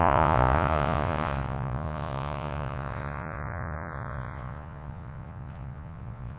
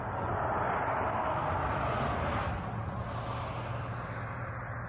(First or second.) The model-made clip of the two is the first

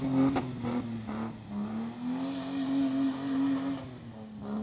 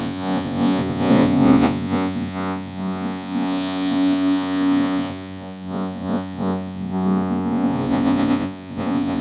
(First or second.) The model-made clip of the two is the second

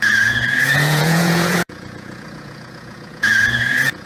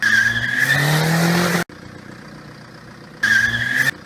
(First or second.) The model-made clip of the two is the first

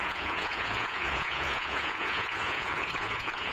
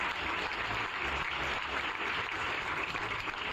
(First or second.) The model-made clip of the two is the first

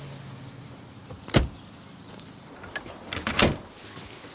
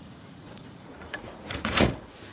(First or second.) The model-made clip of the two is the second